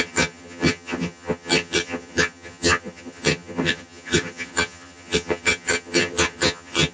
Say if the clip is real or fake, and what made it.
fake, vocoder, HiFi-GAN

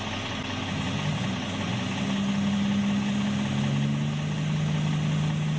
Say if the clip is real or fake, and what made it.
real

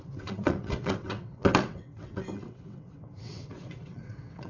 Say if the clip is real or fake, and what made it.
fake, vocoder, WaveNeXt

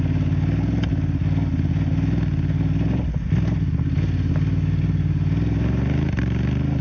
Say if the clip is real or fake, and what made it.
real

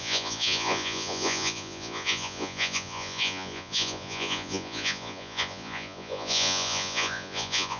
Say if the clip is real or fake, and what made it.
fake, vocoder, Vocos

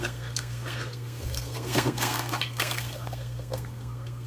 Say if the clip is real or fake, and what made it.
fake, codec, SNAC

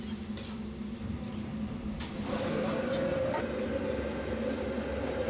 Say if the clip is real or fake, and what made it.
real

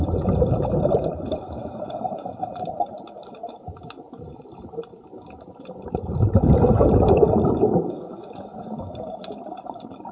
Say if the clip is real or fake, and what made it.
fake, vocoder, BigVGAN v2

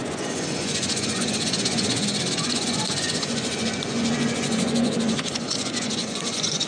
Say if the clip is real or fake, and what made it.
fake, vocoder, Vocos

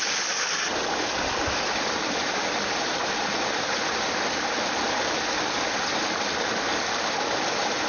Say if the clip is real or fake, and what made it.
real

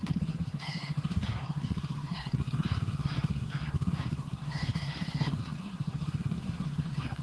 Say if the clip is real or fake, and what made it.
fake, codec, SNAC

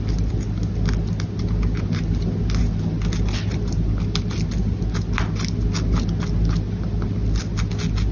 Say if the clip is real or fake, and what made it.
real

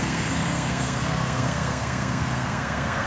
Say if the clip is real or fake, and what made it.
fake, codec, SNAC